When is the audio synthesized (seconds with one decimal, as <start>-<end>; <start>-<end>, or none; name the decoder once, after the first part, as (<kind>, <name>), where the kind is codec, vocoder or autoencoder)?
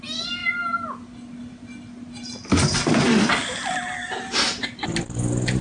none